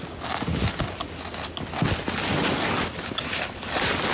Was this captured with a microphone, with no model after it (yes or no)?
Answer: yes